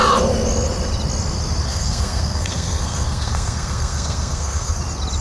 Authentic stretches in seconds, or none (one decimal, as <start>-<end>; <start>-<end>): 0.0-1.7; 4.8-5.2